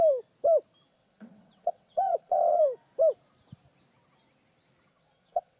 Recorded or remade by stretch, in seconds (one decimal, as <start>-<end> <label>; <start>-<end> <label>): 0.0-0.9 recorded; 0.9-2.6 remade; 2.6-4.9 recorded; 4.9-5.6 remade